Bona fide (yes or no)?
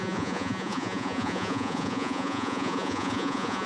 no